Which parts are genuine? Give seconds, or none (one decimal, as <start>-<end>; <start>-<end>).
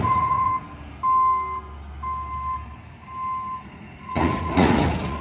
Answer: 0.5-3.6